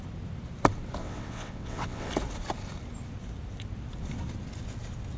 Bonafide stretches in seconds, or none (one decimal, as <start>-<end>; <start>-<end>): 0.0-1.0; 2.1-5.2